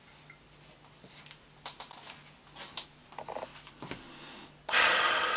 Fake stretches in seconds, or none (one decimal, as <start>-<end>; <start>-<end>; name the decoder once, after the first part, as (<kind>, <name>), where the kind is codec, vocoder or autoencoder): none